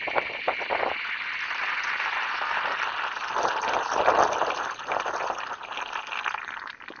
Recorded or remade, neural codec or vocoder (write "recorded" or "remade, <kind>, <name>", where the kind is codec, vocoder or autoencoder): recorded